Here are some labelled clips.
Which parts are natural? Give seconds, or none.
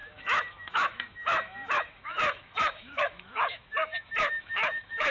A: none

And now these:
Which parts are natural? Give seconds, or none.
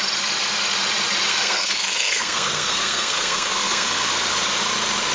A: 0.0-1.3; 4.1-5.1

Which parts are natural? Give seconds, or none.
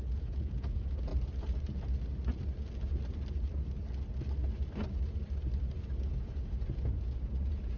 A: 1.1-5.8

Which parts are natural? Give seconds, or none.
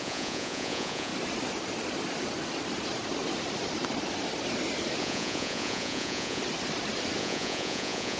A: 1.1-5.0; 6.4-7.2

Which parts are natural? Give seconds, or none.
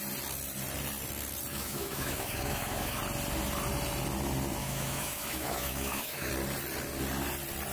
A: 0.0-1.5; 3.0-4.6; 6.3-7.7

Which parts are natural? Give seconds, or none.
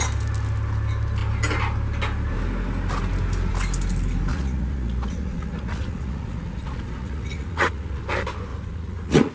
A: 0.0-4.3; 8.0-8.5